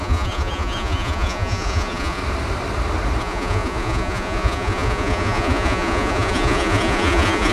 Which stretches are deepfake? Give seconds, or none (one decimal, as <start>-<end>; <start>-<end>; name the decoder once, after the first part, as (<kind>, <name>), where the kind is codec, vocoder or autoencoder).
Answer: 0.0-2.2 (vocoder, Vocos); 3.2-7.5

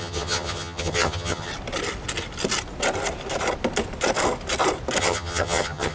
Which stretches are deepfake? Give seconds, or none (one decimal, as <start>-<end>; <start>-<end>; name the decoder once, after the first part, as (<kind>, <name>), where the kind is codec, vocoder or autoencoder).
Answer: 0.0-1.5 (vocoder, HiFi-GAN); 5.0-5.9

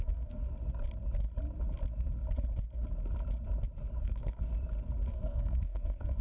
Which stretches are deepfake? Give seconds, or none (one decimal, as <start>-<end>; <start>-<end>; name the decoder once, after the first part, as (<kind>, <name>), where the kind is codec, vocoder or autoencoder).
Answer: 0.0-0.5 (codec, SNAC); 4.0-4.5; 5.1-6.2